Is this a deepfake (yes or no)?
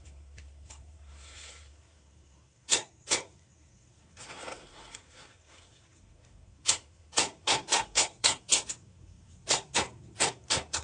yes